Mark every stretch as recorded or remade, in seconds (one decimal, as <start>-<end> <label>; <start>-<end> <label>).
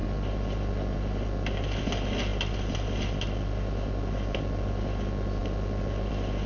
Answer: 0.0-6.5 recorded